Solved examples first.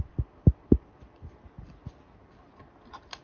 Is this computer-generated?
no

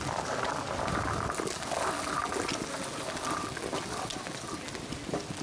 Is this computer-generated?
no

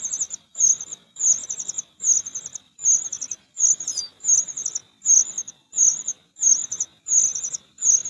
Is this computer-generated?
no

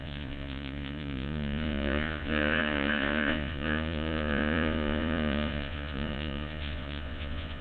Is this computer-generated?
yes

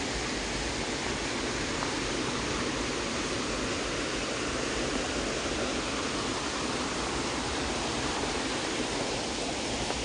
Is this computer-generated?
no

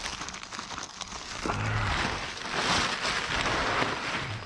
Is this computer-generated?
no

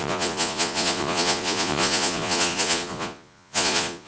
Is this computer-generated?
yes